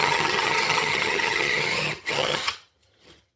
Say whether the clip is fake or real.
fake